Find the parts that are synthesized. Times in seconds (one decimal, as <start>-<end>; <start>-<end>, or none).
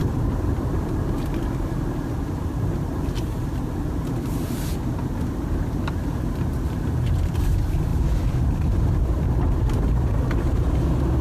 0.0-0.9; 7.9-10.3